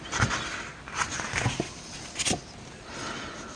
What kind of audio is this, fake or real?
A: real